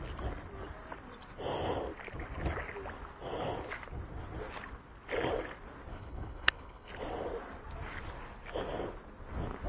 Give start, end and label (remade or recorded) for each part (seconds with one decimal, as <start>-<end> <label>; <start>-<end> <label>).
0.0-5.9 recorded; 5.9-6.9 remade; 6.9-9.7 recorded